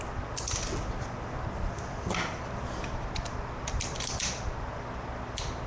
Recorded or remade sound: recorded